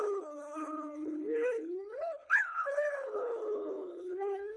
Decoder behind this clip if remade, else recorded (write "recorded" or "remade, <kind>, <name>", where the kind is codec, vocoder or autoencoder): remade, codec, HILCodec